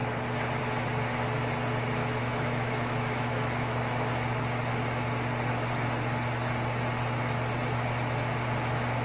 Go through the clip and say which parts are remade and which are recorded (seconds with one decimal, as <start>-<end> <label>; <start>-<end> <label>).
0.0-2.0 recorded; 2.0-4.1 remade; 4.1-9.0 recorded